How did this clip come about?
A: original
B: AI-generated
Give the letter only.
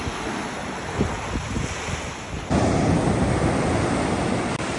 A